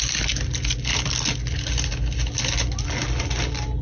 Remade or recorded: recorded